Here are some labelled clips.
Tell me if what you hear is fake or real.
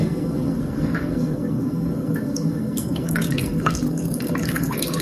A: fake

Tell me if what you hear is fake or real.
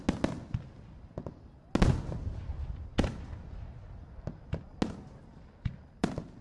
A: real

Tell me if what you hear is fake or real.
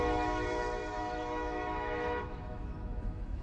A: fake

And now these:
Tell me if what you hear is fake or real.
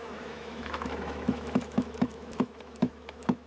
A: fake